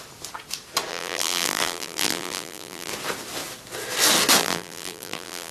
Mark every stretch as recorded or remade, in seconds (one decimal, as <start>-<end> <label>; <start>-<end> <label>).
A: 0.0-0.9 recorded; 0.9-2.9 remade; 2.9-4.4 recorded; 4.4-5.5 remade